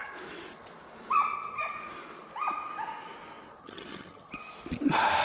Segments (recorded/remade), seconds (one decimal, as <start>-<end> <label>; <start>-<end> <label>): 0.0-3.6 recorded; 3.6-4.3 remade; 4.3-5.2 recorded